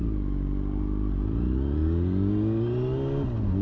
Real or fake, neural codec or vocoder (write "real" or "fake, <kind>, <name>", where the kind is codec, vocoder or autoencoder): real